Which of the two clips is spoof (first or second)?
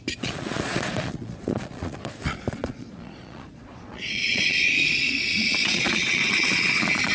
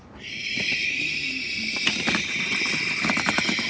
first